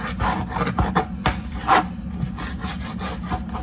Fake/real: real